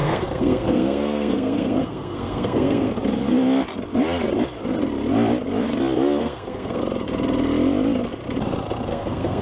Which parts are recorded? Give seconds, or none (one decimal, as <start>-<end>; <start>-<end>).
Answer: 2.9-6.2; 6.8-8.9